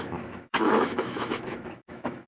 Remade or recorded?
remade